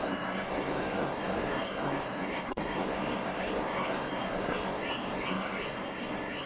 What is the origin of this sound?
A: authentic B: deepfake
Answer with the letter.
B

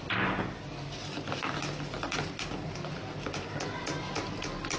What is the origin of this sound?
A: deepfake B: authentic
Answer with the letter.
B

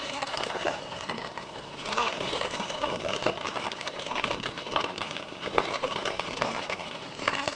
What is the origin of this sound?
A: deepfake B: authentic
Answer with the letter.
A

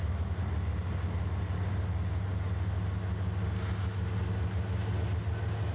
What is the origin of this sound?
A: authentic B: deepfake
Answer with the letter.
A